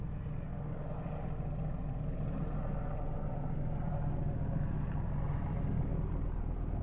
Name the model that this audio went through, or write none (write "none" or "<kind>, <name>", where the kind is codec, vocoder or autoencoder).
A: none